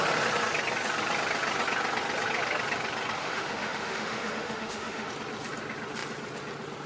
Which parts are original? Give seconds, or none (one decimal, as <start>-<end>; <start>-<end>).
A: 0.0-3.2; 5.1-6.9